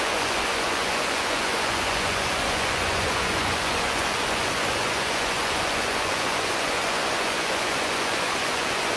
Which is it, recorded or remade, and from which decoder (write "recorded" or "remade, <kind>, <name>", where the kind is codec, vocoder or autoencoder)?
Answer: remade, vocoder, Vocos